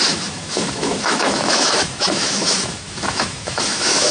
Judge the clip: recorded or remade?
remade